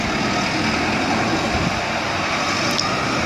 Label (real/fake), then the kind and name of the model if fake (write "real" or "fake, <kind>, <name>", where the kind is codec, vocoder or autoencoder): real